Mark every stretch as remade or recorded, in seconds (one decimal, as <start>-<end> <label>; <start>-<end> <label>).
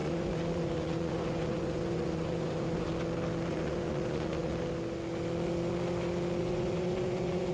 0.0-2.9 remade; 2.9-3.5 recorded; 3.5-4.5 remade; 4.5-6.4 recorded; 6.4-7.5 remade